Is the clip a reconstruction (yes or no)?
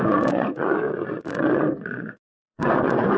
yes